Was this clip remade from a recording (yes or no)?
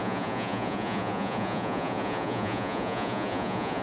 yes